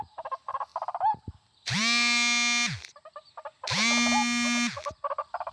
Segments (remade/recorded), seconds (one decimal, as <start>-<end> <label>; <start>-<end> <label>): 0.0-0.7 remade; 0.7-1.4 recorded; 1.4-1.8 remade; 1.8-5.1 recorded; 5.1-5.5 remade